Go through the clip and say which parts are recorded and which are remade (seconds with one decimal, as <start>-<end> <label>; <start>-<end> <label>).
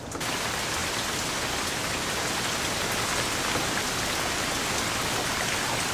0.0-5.9 recorded